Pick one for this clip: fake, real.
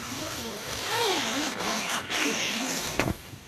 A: fake